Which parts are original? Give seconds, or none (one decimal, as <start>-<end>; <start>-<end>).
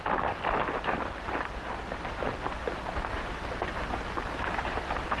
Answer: 0.0-5.2